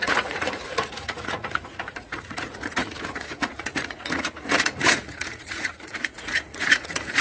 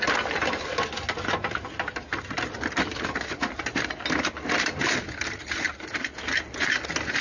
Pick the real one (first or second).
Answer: second